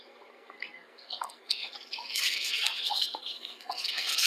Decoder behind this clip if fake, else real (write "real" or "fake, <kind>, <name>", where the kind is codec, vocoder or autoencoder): fake, codec, SNAC